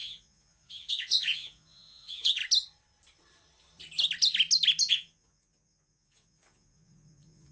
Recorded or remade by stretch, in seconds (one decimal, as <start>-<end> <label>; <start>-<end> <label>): 0.0-2.4 remade; 2.4-4.9 recorded; 4.9-7.5 remade